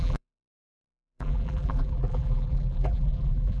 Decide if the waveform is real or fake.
fake